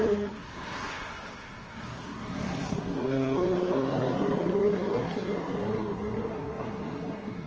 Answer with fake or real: fake